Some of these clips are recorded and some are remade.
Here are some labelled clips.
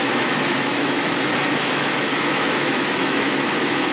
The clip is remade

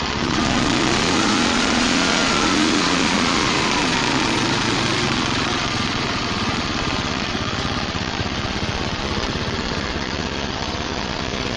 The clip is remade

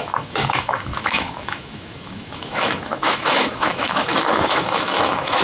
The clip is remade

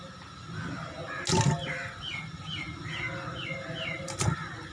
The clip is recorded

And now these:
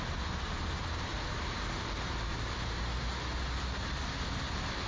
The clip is recorded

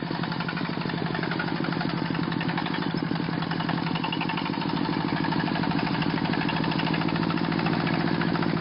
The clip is recorded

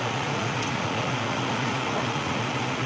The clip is remade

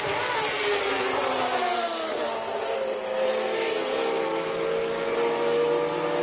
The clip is recorded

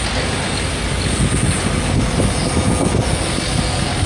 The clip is recorded